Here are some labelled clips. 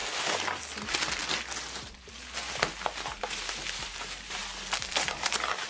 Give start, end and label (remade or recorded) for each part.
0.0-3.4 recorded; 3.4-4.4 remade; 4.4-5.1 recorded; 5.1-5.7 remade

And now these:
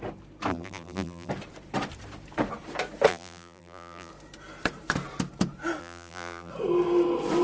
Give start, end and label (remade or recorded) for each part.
0.0-0.5 recorded; 0.5-1.3 remade; 1.3-3.1 recorded; 3.1-4.1 remade; 4.1-5.8 recorded; 5.8-6.5 remade; 6.5-7.4 recorded